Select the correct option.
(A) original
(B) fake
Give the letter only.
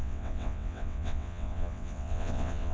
B